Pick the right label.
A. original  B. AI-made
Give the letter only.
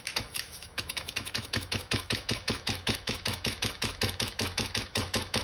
B